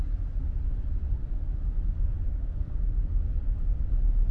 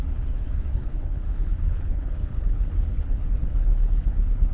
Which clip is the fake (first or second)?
second